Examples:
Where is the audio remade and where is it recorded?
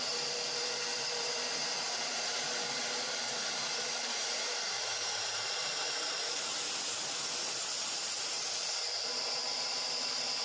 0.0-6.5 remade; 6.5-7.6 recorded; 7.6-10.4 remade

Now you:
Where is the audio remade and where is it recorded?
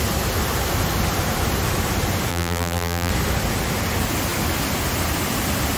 0.0-2.3 recorded; 2.3-3.1 remade; 3.1-5.8 recorded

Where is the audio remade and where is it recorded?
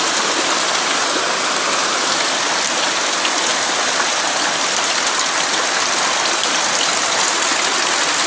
0.0-3.5 recorded; 3.5-6.8 remade; 6.8-8.3 recorded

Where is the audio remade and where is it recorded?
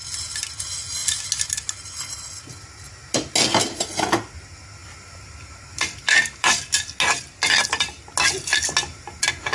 0.0-4.8 recorded; 4.8-6.6 remade; 6.6-7.6 recorded; 7.6-8.1 remade; 8.1-9.5 recorded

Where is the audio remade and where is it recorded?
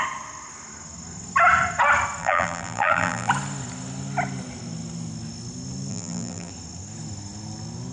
0.0-2.2 recorded; 2.2-3.3 remade; 3.3-5.9 recorded; 5.9-6.5 remade; 6.5-7.9 recorded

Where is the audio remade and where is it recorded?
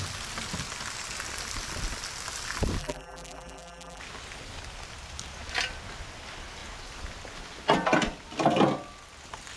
0.0-2.8 recorded; 2.8-4.0 remade; 4.0-9.6 recorded